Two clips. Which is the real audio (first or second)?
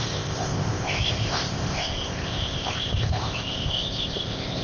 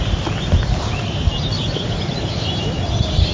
second